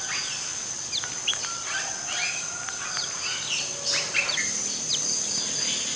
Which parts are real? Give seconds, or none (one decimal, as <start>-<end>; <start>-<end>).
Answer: 0.0-1.3; 4.9-6.0